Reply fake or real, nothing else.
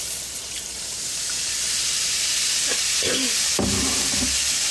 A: fake